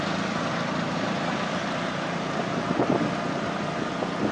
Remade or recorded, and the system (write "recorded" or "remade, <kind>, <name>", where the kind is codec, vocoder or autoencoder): recorded